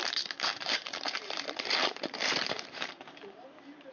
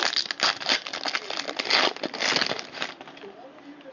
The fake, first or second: first